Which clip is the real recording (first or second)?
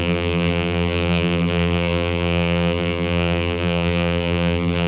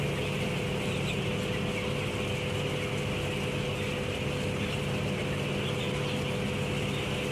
second